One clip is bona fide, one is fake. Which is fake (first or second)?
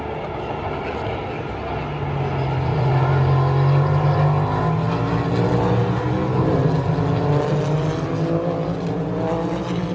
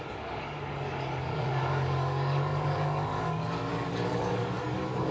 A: second